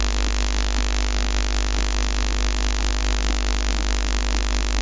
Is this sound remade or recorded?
recorded